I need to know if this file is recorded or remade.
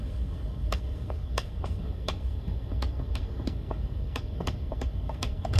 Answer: remade